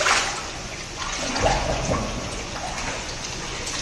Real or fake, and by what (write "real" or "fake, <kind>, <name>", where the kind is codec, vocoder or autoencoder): fake, vocoder, Vocos